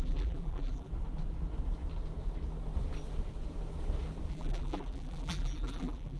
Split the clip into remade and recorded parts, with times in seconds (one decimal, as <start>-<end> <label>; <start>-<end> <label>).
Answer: 0.0-0.9 remade; 0.9-4.3 recorded; 4.3-6.2 remade